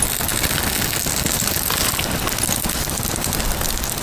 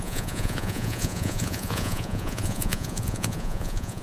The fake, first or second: second